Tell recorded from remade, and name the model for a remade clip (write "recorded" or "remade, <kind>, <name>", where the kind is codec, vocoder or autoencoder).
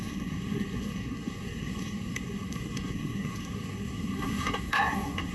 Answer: remade, codec, SNAC